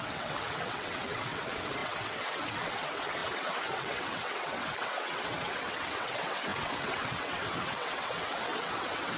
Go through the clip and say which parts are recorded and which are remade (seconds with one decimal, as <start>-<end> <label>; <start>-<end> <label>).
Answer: 0.0-9.2 remade